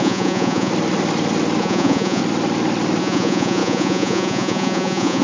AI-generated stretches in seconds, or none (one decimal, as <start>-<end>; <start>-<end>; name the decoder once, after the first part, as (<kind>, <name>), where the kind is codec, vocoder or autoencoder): 0.0-0.7 (vocoder, Vocos); 1.6-2.2; 3.0-5.2